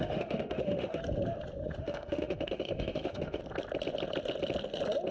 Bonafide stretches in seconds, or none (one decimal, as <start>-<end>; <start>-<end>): 1.0-1.8; 3.4-5.1